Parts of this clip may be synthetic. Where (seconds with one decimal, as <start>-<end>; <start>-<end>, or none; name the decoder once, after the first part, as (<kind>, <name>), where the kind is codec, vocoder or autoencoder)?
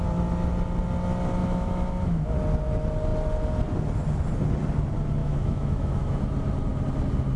1.4-2.3 (autoencoder, DAC-VAE); 5.2-6.2